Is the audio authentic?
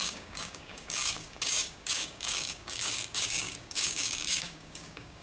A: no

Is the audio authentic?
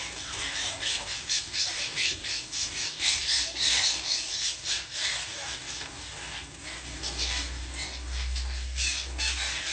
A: no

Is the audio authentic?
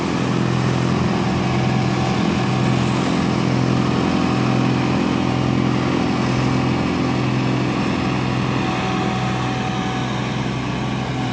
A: yes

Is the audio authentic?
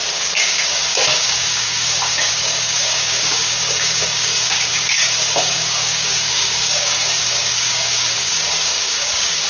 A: no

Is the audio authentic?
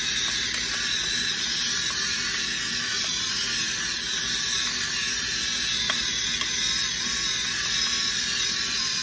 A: yes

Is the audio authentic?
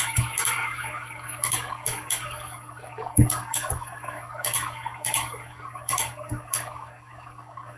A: no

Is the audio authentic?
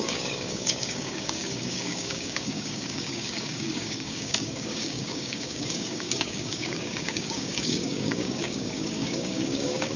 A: no